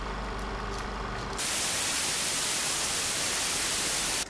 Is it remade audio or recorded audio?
recorded